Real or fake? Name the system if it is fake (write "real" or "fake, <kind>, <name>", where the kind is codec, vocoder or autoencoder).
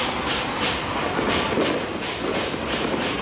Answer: real